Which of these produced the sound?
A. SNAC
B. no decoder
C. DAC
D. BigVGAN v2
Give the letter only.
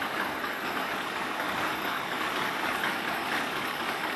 C